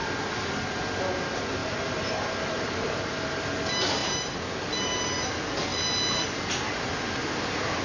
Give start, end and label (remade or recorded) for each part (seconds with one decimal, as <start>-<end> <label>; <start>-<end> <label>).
0.0-1.6 recorded; 1.6-2.7 remade; 2.7-4.0 recorded; 4.0-5.3 remade; 5.3-5.7 recorded; 5.7-6.9 remade; 6.9-7.8 recorded